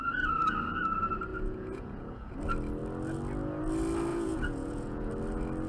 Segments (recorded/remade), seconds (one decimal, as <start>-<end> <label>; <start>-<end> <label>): 0.0-1.3 recorded; 1.3-2.3 remade; 2.3-4.1 recorded; 4.1-5.1 remade; 5.1-5.7 recorded